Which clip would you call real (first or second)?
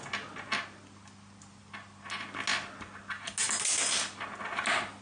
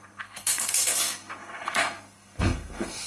first